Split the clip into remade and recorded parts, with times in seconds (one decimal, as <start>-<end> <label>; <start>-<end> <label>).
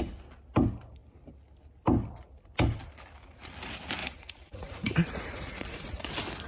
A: 0.0-4.0 recorded; 4.0-6.1 remade; 6.1-6.5 recorded